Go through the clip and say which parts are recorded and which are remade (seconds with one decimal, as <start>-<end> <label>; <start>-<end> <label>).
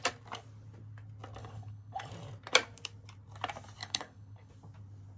0.0-1.4 recorded; 1.4-2.1 remade; 2.1-3.8 recorded; 3.8-4.5 remade; 4.5-5.2 recorded